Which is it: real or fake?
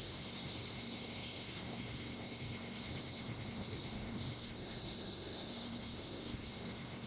fake